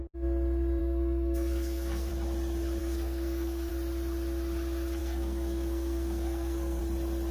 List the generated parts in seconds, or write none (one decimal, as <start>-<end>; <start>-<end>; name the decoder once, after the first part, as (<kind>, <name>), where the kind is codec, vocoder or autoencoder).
0.8-2.1 (codec, SNAC); 2.8-3.7; 5.0-6.8